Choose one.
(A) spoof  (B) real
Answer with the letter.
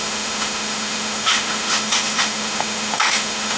A